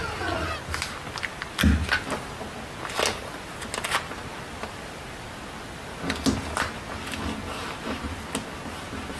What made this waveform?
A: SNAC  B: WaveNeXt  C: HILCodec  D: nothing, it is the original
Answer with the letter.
D